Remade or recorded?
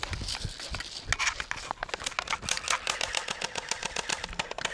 recorded